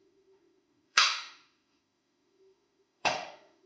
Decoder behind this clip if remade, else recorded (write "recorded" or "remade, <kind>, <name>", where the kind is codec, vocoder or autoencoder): remade, autoencoder, DAC-VAE